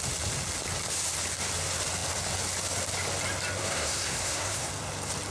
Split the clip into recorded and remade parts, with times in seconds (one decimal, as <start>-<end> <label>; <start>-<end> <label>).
0.0-3.6 recorded; 3.6-4.7 remade; 4.7-5.3 recorded